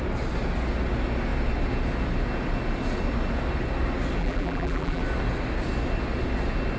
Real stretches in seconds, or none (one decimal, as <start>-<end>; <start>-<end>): 0.0-4.2; 5.0-6.8